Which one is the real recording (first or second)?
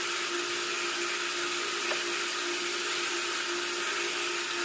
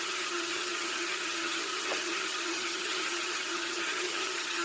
first